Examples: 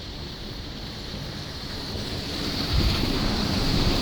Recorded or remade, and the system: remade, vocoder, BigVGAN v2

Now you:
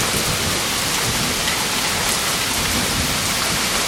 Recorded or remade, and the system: recorded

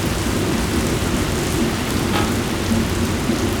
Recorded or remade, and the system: recorded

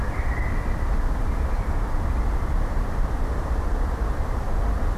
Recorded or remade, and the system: remade, vocoder, BigVGAN v2